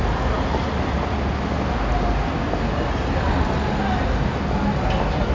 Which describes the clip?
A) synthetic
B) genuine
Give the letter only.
B